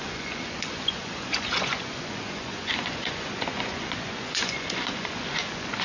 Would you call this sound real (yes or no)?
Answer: no